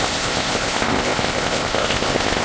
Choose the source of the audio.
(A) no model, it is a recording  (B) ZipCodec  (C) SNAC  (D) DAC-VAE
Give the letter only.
B